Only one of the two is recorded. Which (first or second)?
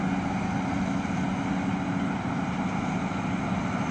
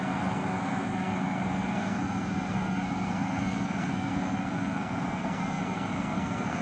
first